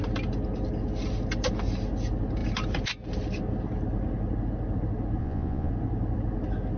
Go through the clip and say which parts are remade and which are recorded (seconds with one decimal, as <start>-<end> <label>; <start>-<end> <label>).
0.0-5.2 recorded; 5.2-5.7 remade; 5.7-6.8 recorded

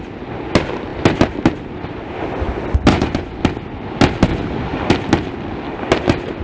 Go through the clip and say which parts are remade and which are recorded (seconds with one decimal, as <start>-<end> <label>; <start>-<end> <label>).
0.0-2.9 recorded; 2.9-3.4 remade; 3.4-6.4 recorded

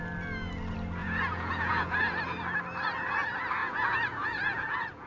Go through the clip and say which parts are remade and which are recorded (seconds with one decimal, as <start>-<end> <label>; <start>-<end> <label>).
0.0-1.0 recorded; 1.0-2.2 remade; 2.2-3.6 recorded; 3.6-5.1 remade

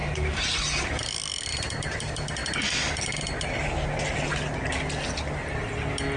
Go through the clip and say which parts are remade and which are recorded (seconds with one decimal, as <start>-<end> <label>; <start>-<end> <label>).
0.0-6.2 recorded

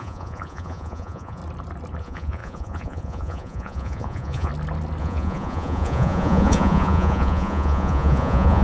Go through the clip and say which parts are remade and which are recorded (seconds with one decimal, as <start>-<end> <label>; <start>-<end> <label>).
0.0-1.4 remade; 1.4-2.0 recorded; 2.0-4.5 remade; 4.5-5.0 recorded; 5.0-8.6 remade